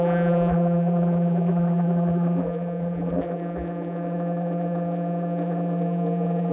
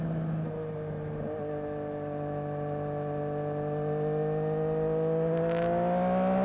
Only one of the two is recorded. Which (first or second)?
second